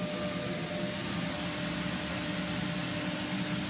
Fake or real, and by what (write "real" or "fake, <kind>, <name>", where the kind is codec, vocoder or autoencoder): real